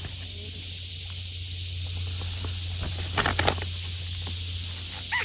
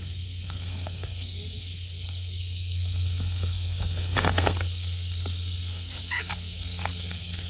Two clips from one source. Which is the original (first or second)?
first